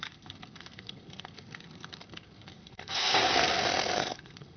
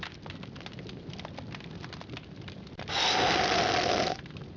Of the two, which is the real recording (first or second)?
second